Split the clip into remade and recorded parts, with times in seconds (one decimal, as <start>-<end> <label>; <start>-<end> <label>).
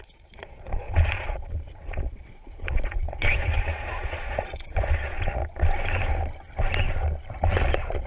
0.0-5.4 remade; 5.4-7.3 recorded; 7.3-8.1 remade